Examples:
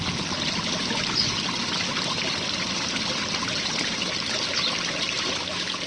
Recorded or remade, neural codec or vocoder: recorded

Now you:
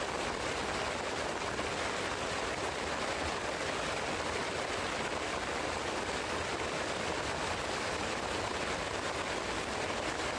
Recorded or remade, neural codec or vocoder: recorded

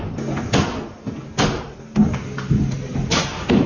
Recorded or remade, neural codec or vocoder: recorded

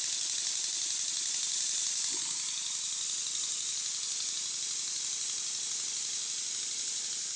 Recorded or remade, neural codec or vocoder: recorded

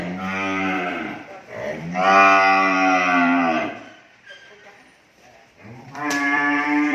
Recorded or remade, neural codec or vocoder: remade, vocoder, BigVGAN v2